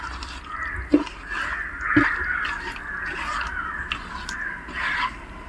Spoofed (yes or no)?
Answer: no